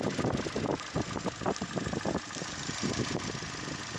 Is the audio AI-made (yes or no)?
no